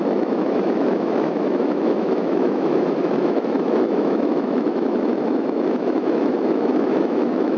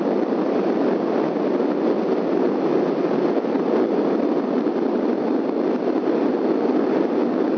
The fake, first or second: first